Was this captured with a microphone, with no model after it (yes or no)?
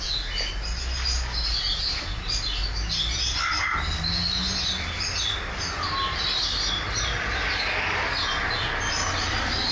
yes